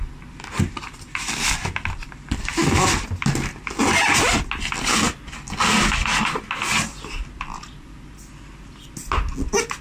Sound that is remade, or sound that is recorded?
recorded